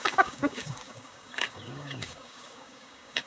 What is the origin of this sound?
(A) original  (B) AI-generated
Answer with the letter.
B